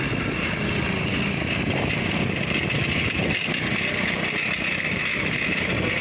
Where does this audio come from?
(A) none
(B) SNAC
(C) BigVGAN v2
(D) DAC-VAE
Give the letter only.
A